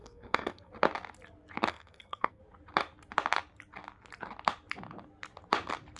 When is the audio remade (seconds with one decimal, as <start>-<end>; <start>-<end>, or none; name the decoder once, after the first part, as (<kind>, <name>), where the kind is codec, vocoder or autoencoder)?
0.0-0.7 (codec, SNAC); 1.7-2.4